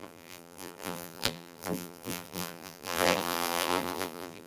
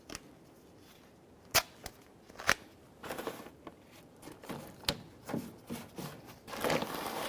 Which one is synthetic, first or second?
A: first